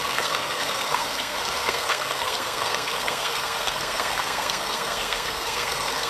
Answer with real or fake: fake